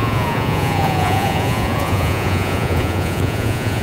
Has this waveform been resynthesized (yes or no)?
yes